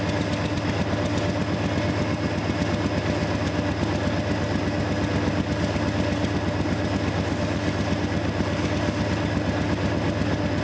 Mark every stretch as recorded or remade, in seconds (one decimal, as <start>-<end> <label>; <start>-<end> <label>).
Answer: 0.0-10.6 recorded